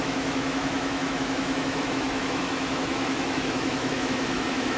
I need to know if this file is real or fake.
fake